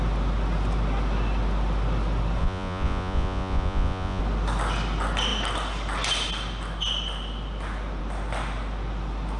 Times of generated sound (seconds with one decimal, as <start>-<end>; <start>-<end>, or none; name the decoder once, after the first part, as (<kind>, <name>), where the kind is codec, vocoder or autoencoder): 2.4-4.2 (vocoder, Vocos)